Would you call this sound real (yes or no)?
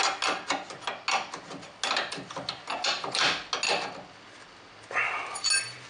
yes